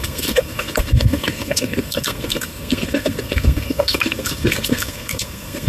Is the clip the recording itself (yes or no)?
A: no